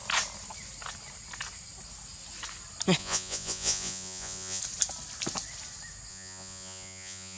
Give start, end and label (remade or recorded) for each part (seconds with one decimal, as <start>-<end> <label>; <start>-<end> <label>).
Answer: 0.0-3.0 recorded; 3.0-4.6 remade; 4.6-6.1 recorded; 6.1-7.4 remade